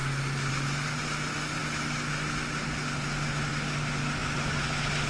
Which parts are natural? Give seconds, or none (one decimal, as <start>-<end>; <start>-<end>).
0.0-5.1